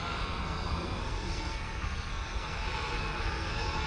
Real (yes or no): no